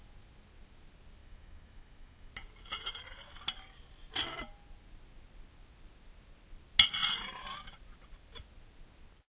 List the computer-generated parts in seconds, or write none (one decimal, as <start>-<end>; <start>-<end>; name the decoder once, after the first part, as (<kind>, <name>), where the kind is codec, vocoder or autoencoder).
1.2-2.3 (autoencoder, DAC-VAE)